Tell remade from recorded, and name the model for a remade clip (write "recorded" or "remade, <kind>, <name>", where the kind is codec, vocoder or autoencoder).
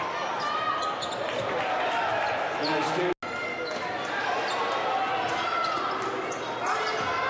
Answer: recorded